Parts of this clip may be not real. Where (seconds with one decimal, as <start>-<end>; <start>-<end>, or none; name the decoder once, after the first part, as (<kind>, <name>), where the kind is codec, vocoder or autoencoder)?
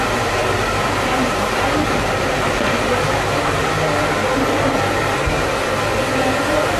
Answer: 0.0-3.6 (vocoder, BigVGAN v2); 6.1-6.8